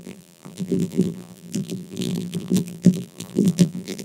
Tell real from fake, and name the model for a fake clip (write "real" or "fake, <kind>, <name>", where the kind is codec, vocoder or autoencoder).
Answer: fake, vocoder, BigVGAN v2